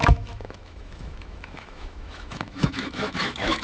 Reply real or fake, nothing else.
fake